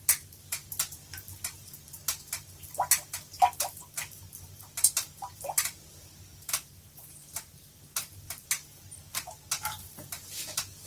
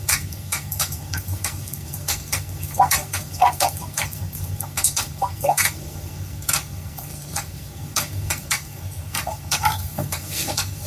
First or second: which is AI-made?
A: second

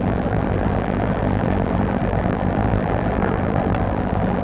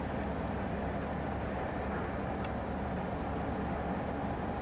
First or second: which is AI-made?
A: first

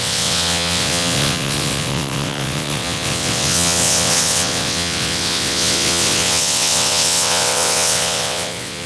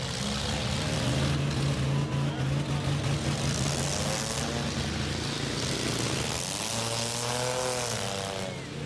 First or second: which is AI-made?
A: first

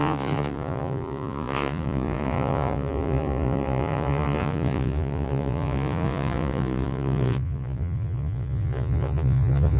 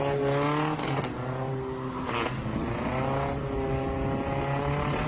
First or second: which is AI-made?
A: first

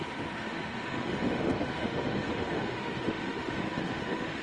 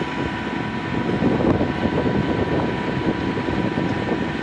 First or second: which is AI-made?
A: first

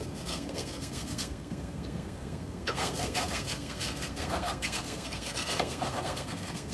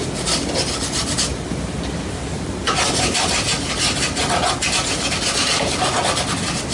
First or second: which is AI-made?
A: first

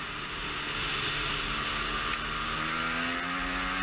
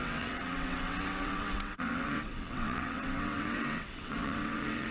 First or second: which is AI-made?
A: second